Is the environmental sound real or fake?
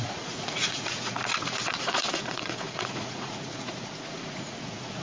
fake